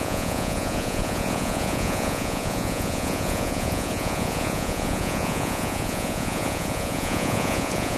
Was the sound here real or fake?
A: fake